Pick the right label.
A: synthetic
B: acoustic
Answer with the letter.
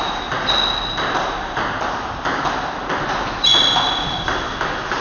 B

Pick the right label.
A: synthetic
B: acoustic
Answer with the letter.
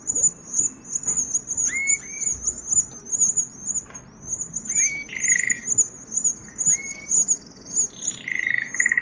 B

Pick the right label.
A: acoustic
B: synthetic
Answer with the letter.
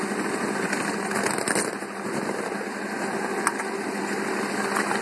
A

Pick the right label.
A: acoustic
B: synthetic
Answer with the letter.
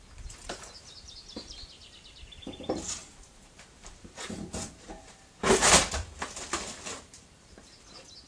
B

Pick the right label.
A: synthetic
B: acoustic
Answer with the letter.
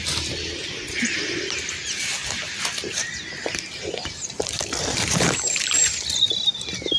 A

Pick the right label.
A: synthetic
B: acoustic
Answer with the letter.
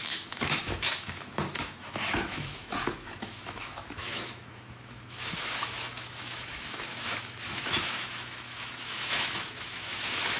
A